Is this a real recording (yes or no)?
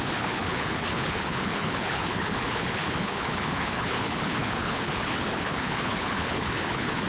no